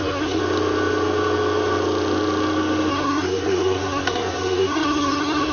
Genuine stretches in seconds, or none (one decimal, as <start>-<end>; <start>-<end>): 0.4-2.9